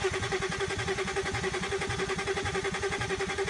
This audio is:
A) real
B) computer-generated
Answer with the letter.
B